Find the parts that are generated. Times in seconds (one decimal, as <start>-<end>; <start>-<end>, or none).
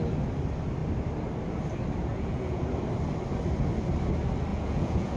2.1-2.6; 4.5-5.2